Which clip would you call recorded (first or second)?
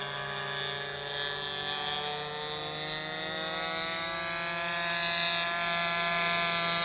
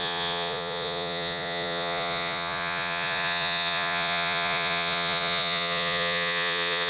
first